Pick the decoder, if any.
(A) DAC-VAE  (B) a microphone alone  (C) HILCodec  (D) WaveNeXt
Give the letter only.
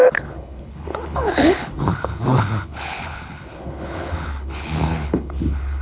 C